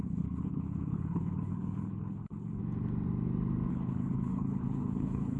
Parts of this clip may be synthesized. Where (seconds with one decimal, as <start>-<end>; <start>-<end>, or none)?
0.0-2.6; 3.7-5.4